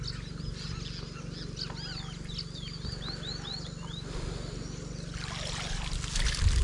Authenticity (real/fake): real